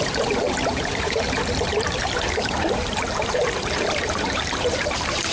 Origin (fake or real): fake